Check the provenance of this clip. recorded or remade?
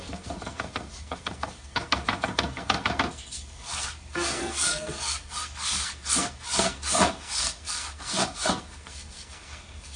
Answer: remade